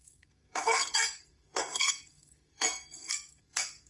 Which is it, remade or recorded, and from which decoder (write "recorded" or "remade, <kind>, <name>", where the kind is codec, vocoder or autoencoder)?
remade, codec, SNAC